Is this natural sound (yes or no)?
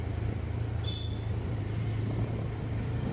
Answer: yes